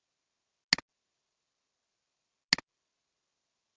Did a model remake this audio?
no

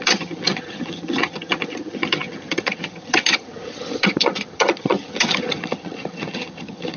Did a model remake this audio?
yes